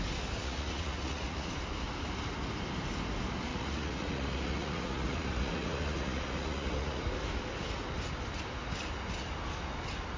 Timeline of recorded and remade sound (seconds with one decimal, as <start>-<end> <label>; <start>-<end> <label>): 0.0-0.4 recorded; 0.4-1.5 remade; 1.5-3.5 recorded; 3.5-7.0 remade; 7.0-10.2 recorded